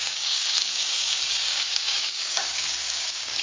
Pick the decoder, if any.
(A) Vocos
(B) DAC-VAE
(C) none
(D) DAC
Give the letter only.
D